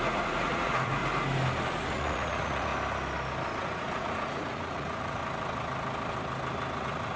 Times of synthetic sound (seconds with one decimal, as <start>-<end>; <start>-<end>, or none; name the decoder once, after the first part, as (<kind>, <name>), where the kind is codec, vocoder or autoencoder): 0.0-1.0 (vocoder, Vocos); 1.9-2.7; 3.6-5.2; 6.8-7.2